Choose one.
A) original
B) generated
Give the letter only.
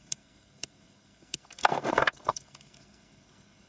B